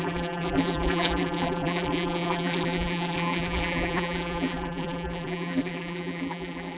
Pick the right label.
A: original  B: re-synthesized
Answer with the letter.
B